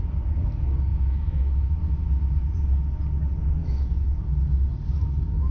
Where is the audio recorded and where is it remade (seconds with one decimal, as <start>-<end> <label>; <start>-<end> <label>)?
0.0-0.9 recorded; 0.9-1.8 remade; 1.8-3.6 recorded; 3.6-4.2 remade; 4.2-5.5 recorded